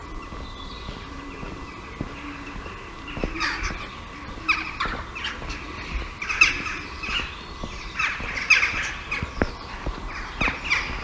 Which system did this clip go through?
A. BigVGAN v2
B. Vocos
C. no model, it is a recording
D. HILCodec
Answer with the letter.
C